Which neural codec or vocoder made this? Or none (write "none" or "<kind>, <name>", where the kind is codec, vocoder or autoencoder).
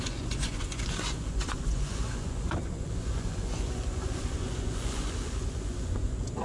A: vocoder, Vocos